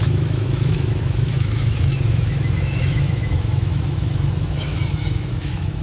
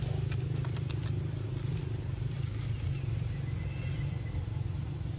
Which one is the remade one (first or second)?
first